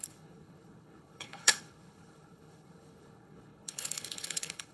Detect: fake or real fake